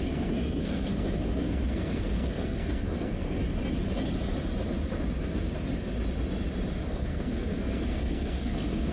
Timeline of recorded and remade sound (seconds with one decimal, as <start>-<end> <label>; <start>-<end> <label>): 0.0-3.4 remade; 3.4-6.9 recorded; 6.9-8.9 remade